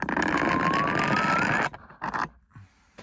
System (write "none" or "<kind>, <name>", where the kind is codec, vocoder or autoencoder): none